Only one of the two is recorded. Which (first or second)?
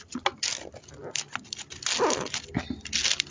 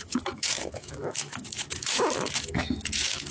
first